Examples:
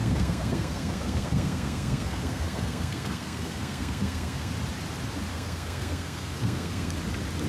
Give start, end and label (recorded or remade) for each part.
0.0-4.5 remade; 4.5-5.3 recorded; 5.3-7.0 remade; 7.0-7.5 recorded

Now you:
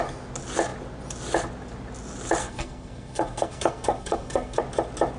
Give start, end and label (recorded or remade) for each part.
0.0-2.4 recorded; 2.4-4.6 remade; 4.6-5.2 recorded

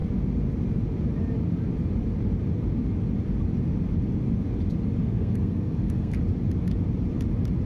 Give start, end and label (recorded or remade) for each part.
0.0-5.0 recorded; 5.0-6.2 remade; 6.2-7.7 recorded

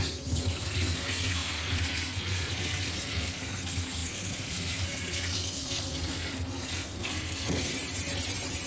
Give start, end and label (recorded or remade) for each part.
0.0-7.7 remade; 7.7-8.7 recorded

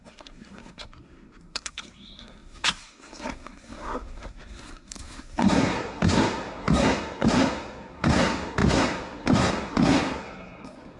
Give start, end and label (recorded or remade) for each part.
0.0-11.0 remade

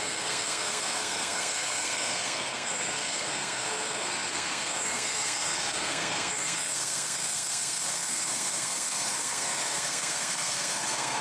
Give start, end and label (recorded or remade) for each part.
0.0-11.2 remade

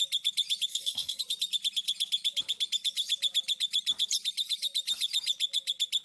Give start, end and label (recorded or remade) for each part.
0.0-0.7 recorded; 0.7-1.2 remade; 1.2-6.0 recorded